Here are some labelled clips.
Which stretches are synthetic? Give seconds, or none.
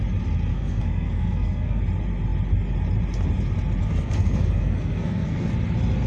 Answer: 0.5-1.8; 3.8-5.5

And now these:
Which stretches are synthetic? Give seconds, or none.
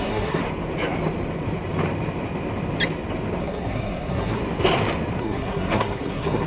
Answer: 0.0-0.4; 3.4-4.4; 5.2-6.5